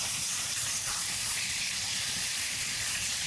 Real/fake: fake